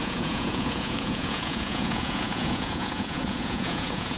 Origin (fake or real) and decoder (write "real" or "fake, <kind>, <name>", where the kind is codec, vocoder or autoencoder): fake, vocoder, Vocos